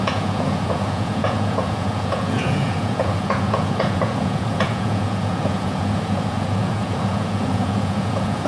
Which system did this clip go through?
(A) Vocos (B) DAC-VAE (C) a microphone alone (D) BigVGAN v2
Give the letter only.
A